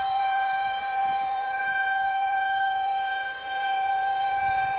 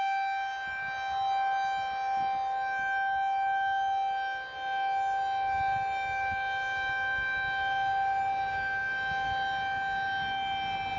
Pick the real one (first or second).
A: second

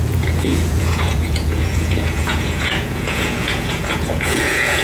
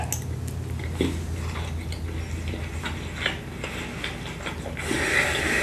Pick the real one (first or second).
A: second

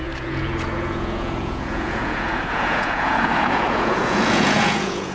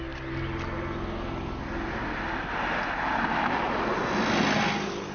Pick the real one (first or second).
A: second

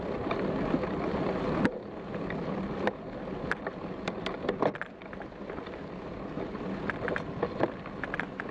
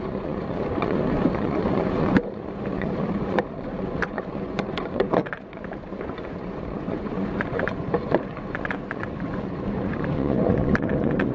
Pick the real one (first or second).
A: first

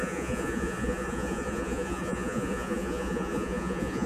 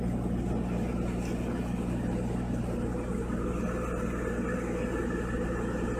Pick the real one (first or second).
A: second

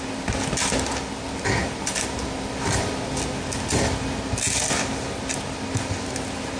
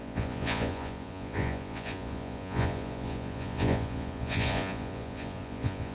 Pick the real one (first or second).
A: first